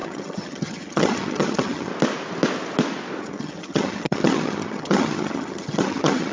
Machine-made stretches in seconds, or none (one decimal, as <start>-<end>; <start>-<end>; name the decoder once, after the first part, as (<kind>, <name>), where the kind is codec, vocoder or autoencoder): 0.0-1.9 (vocoder, HiFi-GAN); 3.2-6.3